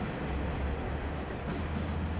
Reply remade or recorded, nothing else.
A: recorded